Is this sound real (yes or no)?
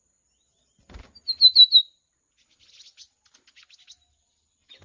yes